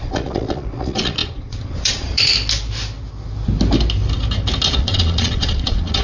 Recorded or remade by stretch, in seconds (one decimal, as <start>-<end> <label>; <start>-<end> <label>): 0.0-2.3 remade; 2.3-4.7 recorded; 4.7-6.0 remade